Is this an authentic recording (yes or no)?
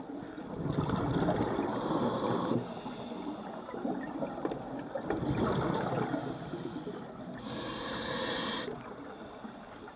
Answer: yes